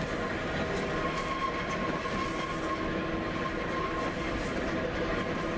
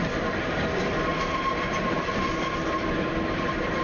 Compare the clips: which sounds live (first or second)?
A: first